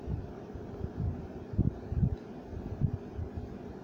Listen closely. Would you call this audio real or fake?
real